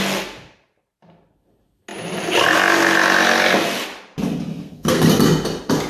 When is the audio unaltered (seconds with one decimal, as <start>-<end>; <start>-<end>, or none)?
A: 0.0-4.5; 5.1-5.9